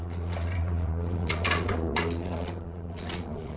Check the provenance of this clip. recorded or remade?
remade